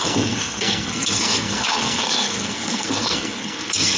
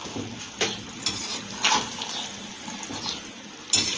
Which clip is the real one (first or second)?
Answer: second